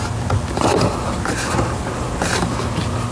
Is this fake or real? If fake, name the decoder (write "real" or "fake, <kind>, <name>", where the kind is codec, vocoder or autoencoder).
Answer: real